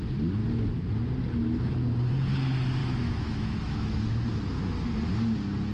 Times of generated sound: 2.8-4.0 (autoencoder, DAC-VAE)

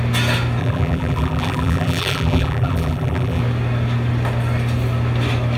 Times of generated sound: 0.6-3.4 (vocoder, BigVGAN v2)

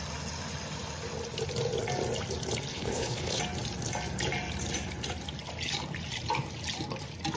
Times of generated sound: 2.7-3.4 (codec, HILCodec)